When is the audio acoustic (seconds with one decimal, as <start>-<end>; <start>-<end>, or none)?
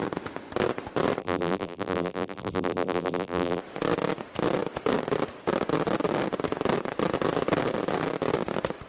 0.0-1.2; 3.6-8.9